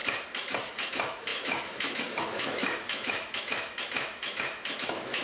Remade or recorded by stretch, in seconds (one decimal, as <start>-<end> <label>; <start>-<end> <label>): 0.0-0.6 recorded; 0.6-5.2 remade